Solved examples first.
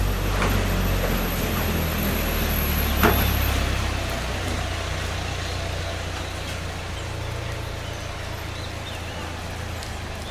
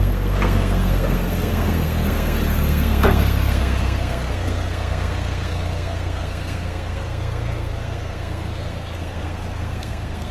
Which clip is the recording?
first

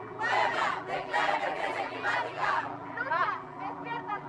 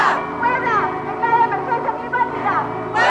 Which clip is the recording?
second